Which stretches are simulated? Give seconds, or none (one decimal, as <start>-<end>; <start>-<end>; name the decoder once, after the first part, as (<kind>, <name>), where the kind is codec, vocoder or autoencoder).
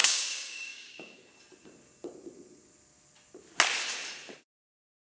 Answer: 0.0-1.2 (codec, DAC)